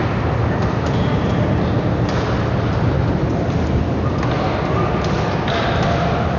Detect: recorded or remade recorded